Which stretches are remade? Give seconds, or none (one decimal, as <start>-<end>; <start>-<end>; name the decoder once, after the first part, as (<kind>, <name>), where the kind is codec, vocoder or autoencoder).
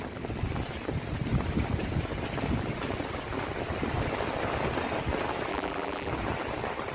5.5-6.1 (vocoder, BigVGAN v2)